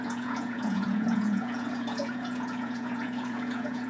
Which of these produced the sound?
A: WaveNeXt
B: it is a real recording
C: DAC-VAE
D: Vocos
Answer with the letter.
D